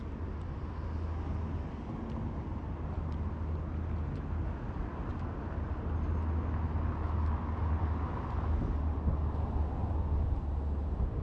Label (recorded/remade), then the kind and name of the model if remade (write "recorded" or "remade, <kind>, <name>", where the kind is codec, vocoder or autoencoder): recorded